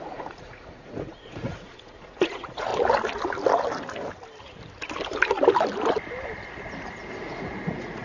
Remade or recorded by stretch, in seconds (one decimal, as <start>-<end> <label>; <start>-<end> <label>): 0.0-2.7 remade; 2.7-7.2 recorded; 7.2-8.0 remade